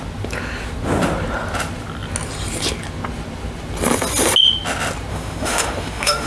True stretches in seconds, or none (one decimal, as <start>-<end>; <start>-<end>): 0.0-5.1